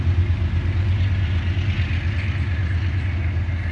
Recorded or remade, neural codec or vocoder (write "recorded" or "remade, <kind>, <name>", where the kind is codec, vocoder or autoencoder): recorded